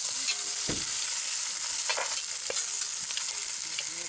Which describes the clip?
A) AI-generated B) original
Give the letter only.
B